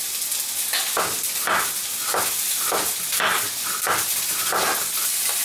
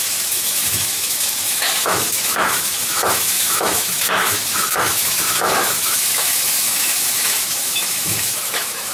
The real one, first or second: first